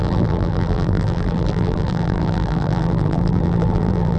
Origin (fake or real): fake